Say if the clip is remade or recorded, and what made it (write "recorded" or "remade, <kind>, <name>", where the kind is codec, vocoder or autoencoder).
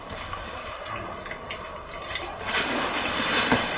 recorded